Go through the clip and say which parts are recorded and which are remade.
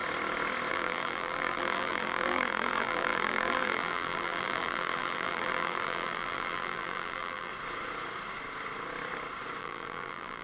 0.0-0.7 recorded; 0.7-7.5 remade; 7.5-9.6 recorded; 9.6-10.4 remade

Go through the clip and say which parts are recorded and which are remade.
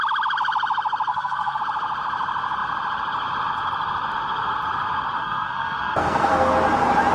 0.0-1.1 recorded; 1.1-1.6 remade; 1.6-5.2 recorded; 5.2-6.5 remade; 6.5-7.1 recorded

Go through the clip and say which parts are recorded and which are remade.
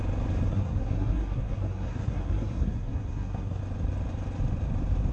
0.0-0.5 recorded; 0.5-3.6 remade; 3.6-5.1 recorded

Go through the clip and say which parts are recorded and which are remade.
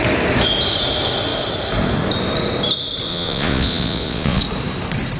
0.0-3.1 recorded; 3.1-4.4 remade; 4.4-5.2 recorded